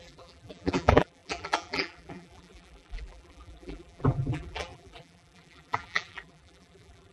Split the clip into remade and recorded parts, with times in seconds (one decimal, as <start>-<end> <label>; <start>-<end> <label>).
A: 0.0-7.1 remade